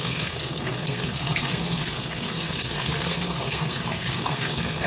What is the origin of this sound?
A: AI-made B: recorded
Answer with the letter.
A